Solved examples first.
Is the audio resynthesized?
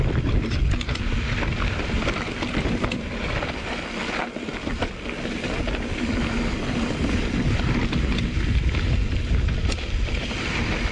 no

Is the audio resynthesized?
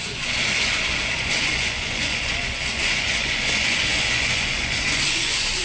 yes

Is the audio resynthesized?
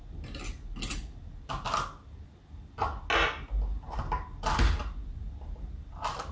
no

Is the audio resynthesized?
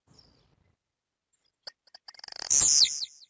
no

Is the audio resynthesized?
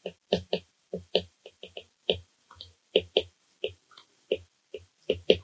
no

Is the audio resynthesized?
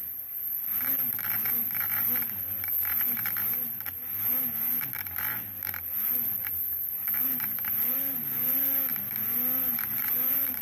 no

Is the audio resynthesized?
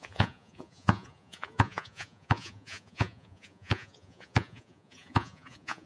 yes